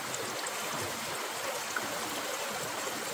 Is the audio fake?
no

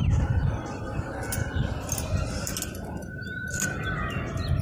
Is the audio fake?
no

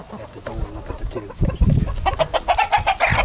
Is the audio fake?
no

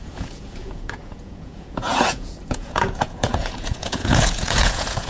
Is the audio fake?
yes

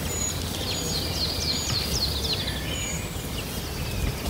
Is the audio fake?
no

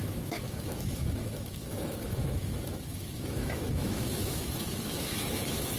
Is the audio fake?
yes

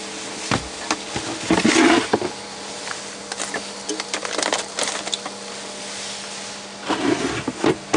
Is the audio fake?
no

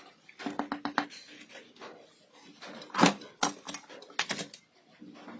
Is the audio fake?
no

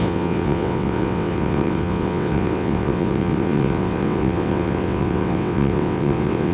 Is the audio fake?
yes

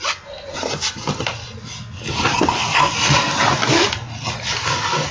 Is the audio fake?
no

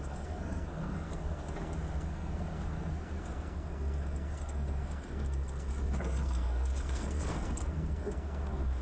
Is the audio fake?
yes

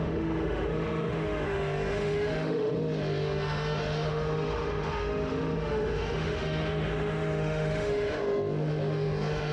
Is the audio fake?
yes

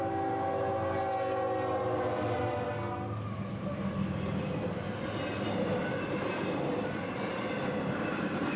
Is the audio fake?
no